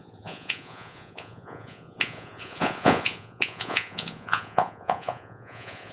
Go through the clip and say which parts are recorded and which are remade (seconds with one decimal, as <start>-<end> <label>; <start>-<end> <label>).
0.0-5.9 remade